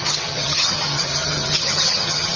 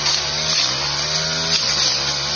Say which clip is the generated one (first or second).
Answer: first